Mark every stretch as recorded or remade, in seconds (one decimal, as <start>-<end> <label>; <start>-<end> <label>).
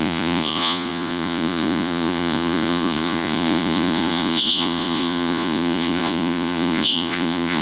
0.0-7.6 remade